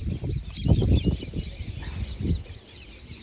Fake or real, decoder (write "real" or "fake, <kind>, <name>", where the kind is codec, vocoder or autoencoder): real